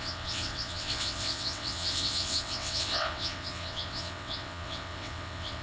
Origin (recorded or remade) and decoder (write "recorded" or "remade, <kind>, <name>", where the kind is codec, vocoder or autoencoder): remade, vocoder, WaveNeXt